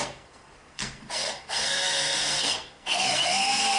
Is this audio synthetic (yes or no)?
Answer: yes